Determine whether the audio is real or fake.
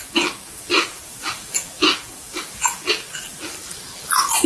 fake